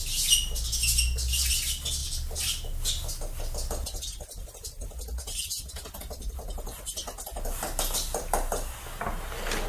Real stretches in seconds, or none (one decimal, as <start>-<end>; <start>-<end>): 0.0-9.7